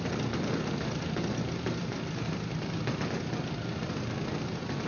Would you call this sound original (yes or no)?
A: yes